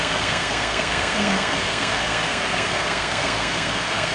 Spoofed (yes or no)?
yes